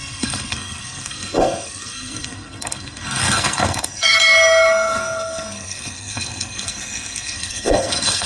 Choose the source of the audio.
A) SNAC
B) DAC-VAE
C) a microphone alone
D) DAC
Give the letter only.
A